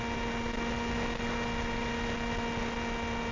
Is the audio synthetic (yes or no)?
no